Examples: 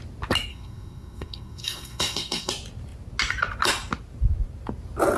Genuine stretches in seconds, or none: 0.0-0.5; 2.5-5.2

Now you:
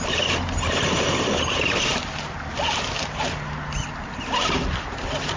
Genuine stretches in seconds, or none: 1.9-5.4

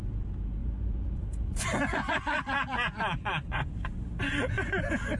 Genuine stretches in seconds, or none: 0.0-0.6; 3.7-5.2

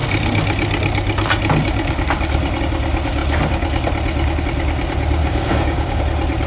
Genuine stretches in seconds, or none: 0.0-5.2; 6.0-6.5